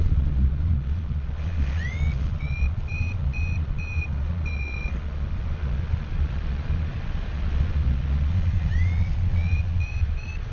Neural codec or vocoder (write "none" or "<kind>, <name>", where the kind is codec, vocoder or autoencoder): vocoder, Vocos